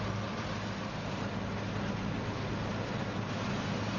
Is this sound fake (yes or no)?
no